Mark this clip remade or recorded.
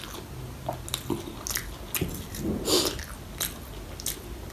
recorded